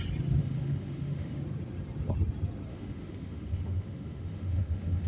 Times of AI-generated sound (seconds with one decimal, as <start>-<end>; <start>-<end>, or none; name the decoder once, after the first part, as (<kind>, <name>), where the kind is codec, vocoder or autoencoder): 0.4-1.4 (autoencoder, DAC-VAE); 2.7-5.1